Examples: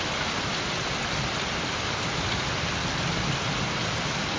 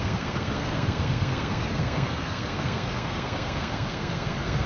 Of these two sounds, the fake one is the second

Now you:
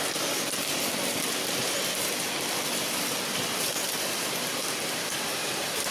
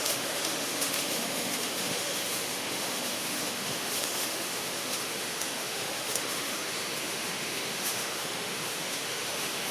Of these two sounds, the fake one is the second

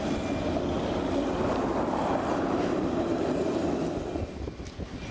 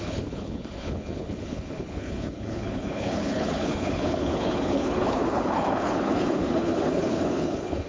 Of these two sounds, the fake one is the second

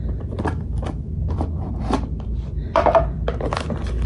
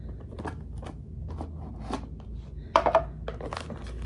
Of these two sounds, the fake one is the first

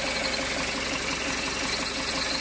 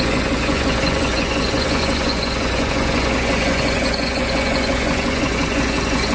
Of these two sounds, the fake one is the second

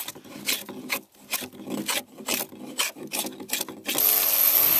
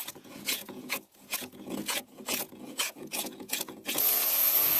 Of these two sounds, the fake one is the second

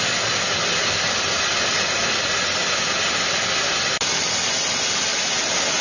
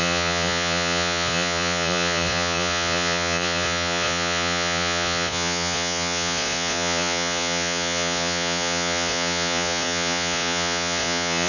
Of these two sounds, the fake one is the second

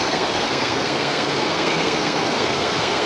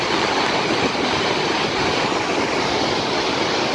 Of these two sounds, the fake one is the first